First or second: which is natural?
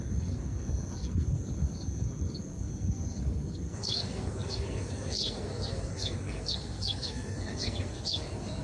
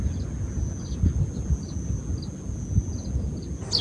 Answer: second